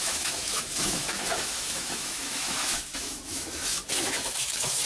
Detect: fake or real fake